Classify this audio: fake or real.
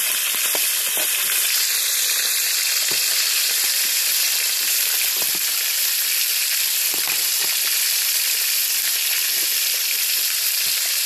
fake